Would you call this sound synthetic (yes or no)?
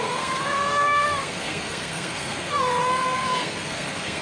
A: yes